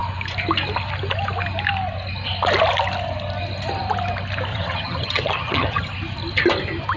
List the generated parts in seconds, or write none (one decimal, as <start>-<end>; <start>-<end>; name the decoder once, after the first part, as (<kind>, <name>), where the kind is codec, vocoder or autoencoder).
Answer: 4.5-5.9 (vocoder, HiFi-GAN)